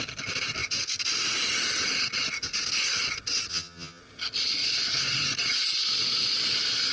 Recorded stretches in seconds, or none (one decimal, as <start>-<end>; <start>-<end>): 0.0-3.5; 4.0-6.9